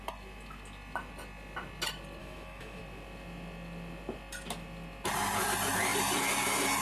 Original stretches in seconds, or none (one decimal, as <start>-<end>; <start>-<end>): 0.0-2.2; 2.8-6.8